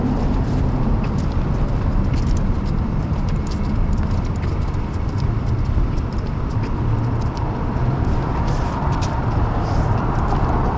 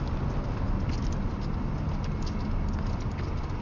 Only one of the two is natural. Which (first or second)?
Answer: second